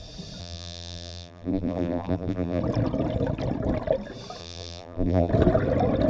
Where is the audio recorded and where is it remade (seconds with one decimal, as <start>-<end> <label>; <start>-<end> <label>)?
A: 0.0-0.4 recorded; 0.4-2.6 remade; 2.6-4.4 recorded; 4.4-5.3 remade; 5.3-6.1 recorded

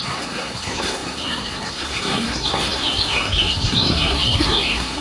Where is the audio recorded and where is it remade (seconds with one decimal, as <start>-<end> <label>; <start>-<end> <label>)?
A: 0.0-5.0 remade

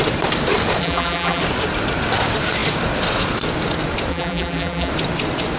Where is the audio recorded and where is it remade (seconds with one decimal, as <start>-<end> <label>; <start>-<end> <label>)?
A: 0.0-0.8 recorded; 0.8-1.4 remade; 1.4-4.1 recorded; 4.1-4.9 remade; 4.9-5.6 recorded

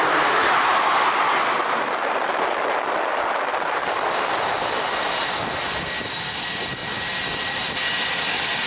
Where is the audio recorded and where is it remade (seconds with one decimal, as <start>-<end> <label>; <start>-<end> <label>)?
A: 0.0-0.4 remade; 0.4-2.1 recorded; 2.1-8.7 remade

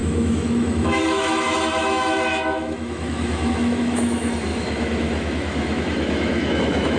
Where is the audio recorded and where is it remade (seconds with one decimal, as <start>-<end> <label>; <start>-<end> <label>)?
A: 0.0-7.0 remade

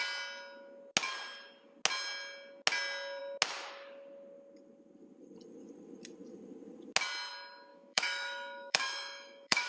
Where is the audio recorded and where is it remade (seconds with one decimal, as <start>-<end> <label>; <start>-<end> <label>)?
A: 0.0-7.7 recorded; 7.7-9.7 remade

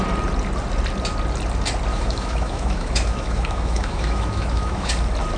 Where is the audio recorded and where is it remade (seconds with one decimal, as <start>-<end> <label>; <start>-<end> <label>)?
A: 0.0-1.9 recorded; 1.9-4.9 remade; 4.9-5.4 recorded